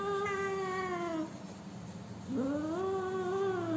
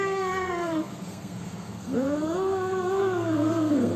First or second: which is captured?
first